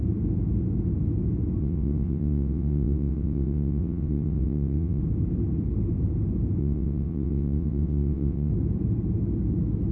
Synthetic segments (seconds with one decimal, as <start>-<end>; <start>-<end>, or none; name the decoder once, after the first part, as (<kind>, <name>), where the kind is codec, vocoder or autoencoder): 1.6-5.0 (vocoder, WaveNeXt); 6.6-8.5